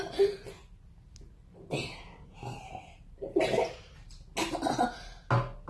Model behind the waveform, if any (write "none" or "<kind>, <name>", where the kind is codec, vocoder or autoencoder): none